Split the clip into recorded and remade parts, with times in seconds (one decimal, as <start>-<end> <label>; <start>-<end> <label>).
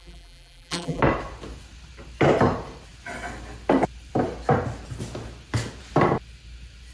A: 0.0-1.0 remade; 1.0-6.9 recorded